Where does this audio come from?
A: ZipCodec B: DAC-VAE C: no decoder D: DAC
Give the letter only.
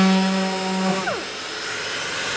C